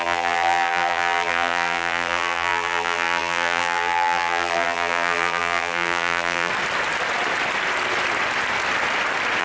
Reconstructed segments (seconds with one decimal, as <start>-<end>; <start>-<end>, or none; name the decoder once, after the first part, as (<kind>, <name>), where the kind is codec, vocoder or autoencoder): 0.0-6.5 (vocoder, BigVGAN v2)

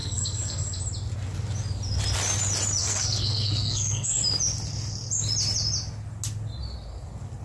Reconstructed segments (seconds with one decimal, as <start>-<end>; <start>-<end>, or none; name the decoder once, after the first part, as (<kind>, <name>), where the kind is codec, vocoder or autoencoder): 0.0-0.8 (codec, SNAC); 2.8-4.2

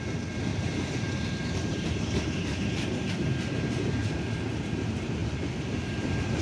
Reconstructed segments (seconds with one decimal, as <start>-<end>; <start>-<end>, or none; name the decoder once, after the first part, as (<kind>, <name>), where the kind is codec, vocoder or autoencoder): 0.5-4.3 (vocoder, BigVGAN v2)

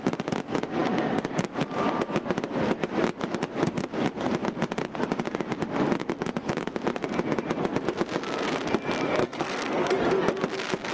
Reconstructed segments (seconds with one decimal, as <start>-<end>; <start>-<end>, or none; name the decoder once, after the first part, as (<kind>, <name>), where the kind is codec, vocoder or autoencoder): 9.2-9.9 (codec, SNAC)

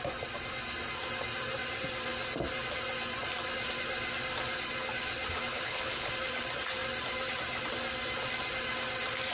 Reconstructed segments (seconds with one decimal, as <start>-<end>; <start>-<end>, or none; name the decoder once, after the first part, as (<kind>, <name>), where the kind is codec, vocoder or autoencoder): 5.5-6.1 (codec, HILCodec)

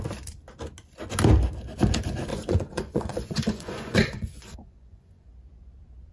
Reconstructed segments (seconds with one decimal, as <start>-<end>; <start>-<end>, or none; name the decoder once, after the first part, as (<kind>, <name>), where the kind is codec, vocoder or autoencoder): 2.3-5.3 (vocoder, Vocos)

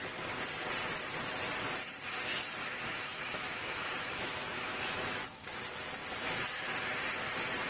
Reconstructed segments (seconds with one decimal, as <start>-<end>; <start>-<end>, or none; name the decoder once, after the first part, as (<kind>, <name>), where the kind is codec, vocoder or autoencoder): 2.6-5.6 (autoencoder, DAC-VAE)

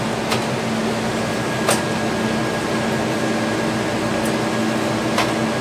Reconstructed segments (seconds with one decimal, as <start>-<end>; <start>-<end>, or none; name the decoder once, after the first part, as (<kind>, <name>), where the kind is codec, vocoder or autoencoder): none